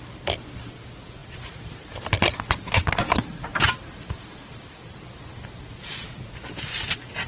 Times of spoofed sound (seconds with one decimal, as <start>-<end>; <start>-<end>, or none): none